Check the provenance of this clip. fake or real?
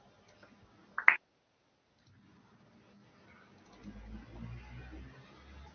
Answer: real